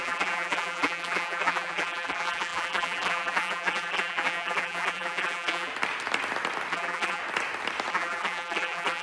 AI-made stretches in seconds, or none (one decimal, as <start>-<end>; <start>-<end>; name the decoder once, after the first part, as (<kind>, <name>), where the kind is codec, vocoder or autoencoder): 0.0-5.7 (vocoder, BigVGAN v2); 6.7-7.2; 7.9-9.0